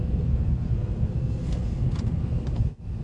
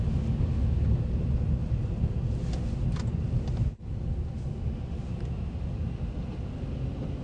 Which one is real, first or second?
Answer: second